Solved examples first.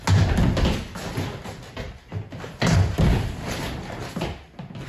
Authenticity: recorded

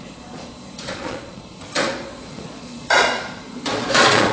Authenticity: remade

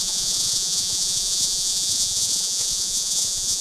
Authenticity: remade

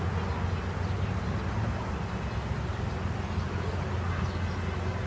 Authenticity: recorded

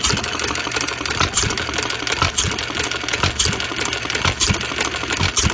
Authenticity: recorded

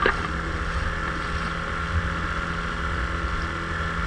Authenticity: recorded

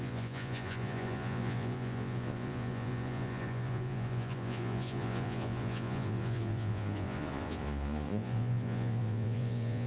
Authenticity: remade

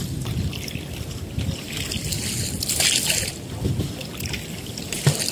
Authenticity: recorded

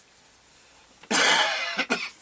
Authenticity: recorded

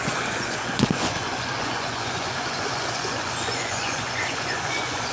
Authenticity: remade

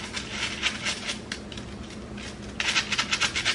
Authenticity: recorded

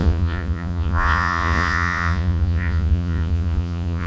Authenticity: remade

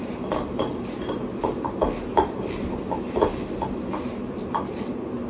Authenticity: recorded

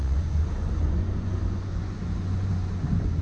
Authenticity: remade